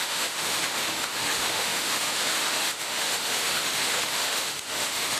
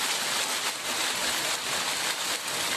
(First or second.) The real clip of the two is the second